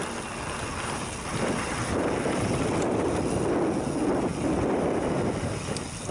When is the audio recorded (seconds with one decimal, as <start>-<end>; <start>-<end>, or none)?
0.0-1.3; 2.0-4.3; 5.4-6.1